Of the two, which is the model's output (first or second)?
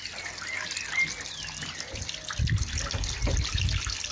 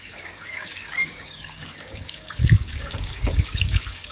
second